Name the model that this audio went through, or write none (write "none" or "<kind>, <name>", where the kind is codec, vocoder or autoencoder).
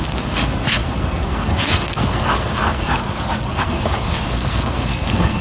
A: codec, SNAC